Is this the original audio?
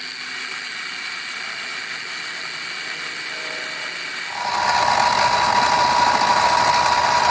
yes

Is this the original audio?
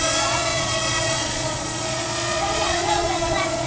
no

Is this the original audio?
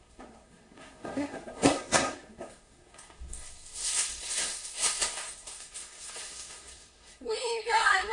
no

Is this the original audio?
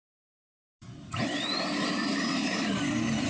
no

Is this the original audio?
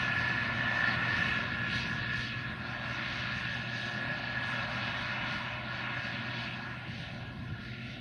yes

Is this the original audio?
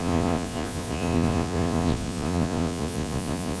no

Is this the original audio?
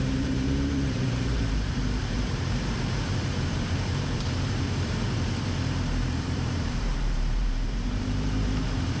no